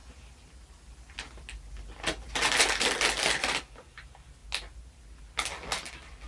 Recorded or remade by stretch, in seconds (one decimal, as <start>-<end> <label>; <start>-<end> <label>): 0.0-6.3 recorded